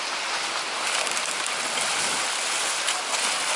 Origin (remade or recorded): recorded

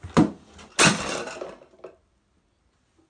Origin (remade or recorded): recorded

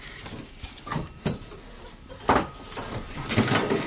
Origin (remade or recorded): recorded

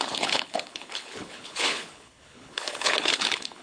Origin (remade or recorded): remade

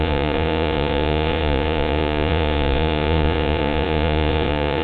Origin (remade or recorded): remade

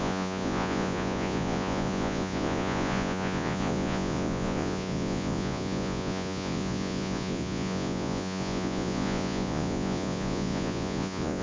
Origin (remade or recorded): remade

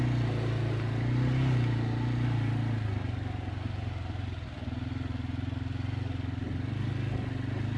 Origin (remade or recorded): recorded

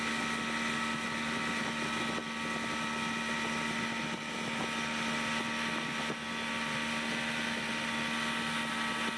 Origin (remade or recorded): recorded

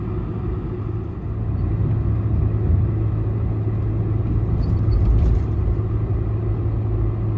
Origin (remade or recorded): recorded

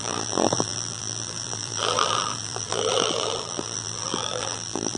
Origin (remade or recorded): remade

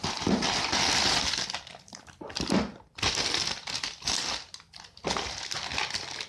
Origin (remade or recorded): recorded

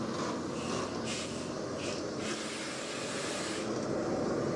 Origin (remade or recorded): recorded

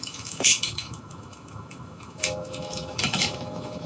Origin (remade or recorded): remade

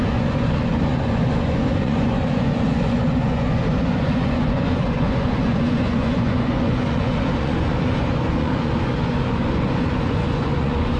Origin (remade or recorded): remade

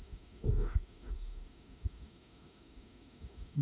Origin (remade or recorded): remade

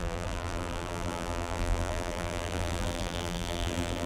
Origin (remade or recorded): remade